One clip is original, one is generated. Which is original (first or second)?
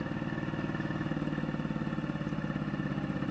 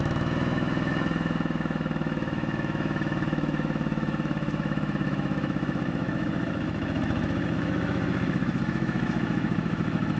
first